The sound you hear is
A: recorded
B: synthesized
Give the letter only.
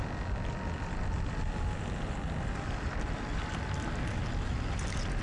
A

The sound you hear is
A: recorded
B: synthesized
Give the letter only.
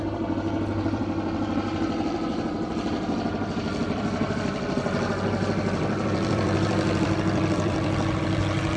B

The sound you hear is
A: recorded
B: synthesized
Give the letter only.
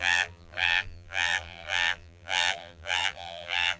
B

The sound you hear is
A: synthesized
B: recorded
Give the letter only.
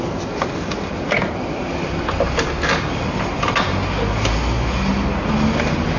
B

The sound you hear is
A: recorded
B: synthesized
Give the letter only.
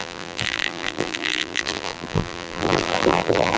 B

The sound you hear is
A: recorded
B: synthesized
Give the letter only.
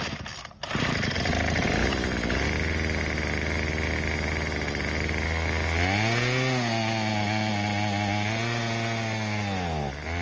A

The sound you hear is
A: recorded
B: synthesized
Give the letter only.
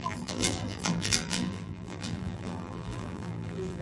B